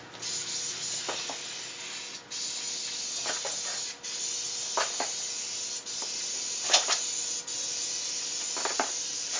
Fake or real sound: real